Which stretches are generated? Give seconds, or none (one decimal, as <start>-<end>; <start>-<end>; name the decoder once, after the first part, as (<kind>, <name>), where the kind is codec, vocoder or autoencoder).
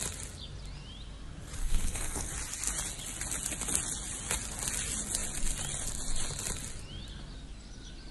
1.6-2.3 (codec, SNAC)